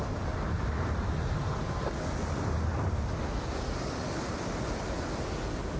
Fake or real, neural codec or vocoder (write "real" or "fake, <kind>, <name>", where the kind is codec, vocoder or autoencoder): real